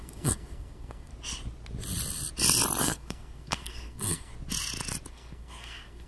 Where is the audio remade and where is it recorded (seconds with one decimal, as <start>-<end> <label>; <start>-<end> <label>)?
0.0-1.1 remade; 1.1-2.8 recorded; 2.8-4.3 remade; 4.3-5.1 recorded; 5.1-6.1 remade